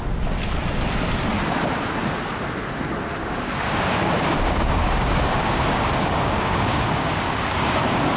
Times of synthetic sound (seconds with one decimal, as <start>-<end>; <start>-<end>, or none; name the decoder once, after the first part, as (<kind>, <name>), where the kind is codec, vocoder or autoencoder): 3.2-7.6 (codec, DAC)